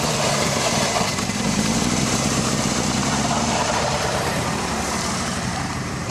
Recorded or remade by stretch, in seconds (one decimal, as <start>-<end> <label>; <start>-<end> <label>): 0.0-6.1 remade